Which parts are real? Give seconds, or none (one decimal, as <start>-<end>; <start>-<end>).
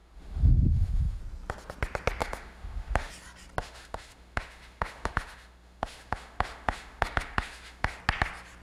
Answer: 1.2-2.2; 3.1-3.6; 8.0-8.6